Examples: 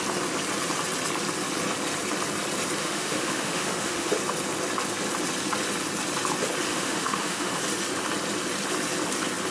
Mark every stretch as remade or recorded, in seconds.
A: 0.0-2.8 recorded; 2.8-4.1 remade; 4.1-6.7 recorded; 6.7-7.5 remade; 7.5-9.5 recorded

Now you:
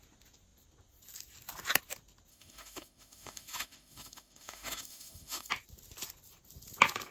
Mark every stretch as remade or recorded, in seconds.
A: 0.0-2.3 recorded; 2.3-5.5 remade; 5.5-7.1 recorded

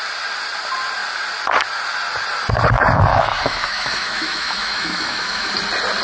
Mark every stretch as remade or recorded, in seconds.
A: 0.0-3.1 recorded; 3.1-5.5 remade; 5.5-6.0 recorded

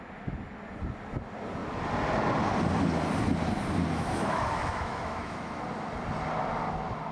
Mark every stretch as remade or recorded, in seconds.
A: 0.0-3.9 recorded; 3.9-5.6 remade; 5.6-7.1 recorded

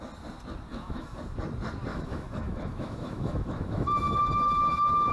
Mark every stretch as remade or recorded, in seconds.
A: 0.0-0.7 recorded; 0.7-1.2 remade; 1.2-1.9 recorded; 1.9-5.1 remade